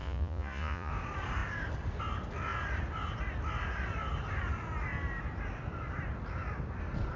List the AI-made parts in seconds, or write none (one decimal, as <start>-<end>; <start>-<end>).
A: 0.0-0.9